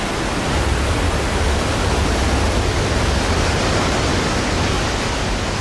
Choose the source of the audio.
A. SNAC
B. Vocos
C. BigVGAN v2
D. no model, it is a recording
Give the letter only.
D